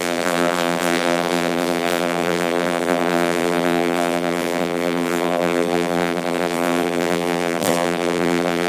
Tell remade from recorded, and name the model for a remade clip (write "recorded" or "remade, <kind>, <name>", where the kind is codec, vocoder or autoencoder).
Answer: remade, vocoder, BigVGAN v2